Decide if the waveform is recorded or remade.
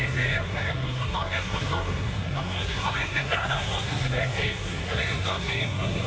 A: remade